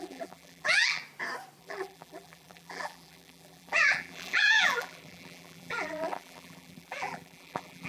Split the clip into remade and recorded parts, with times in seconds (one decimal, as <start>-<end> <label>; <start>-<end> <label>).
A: 0.0-1.0 remade; 1.0-1.6 recorded; 1.6-7.9 remade